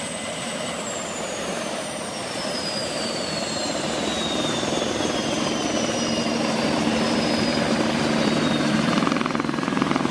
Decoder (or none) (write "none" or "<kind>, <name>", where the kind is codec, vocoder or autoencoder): vocoder, BigVGAN v2